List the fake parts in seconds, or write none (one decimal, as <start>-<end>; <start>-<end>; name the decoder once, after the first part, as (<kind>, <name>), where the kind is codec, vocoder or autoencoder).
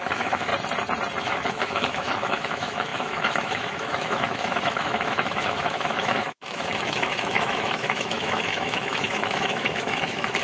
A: 0.0-0.5 (autoencoder, DAC-VAE); 1.2-10.4